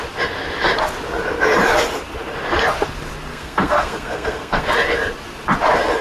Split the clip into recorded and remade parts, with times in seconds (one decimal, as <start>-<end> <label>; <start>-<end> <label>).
0.0-3.3 recorded; 3.3-4.7 remade; 4.7-6.0 recorded